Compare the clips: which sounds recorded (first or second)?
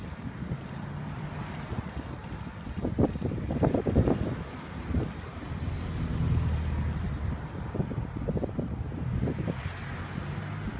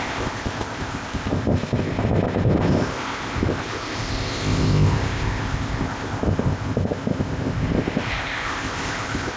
first